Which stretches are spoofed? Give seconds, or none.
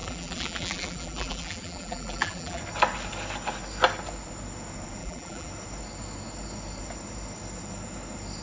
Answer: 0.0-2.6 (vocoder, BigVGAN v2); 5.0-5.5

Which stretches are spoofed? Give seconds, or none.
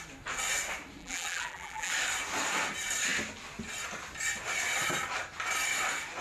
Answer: 1.0-1.9 (vocoder, BigVGAN v2)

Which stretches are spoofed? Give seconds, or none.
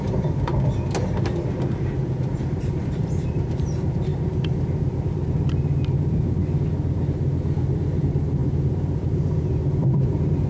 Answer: 0.0-0.5 (vocoder, BigVGAN v2); 2.2-4.1; 8.0-10.5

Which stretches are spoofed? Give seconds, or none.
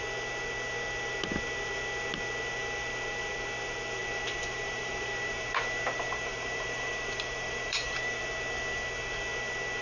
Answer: 4.0-8.2 (vocoder, BigVGAN v2)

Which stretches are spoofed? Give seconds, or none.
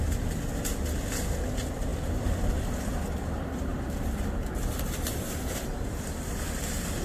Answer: 3.7-6.6 (vocoder, BigVGAN v2)